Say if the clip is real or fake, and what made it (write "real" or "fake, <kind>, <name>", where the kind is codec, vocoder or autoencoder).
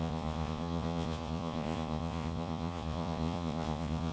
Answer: fake, vocoder, Vocos